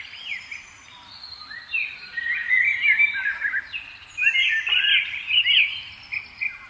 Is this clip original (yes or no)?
no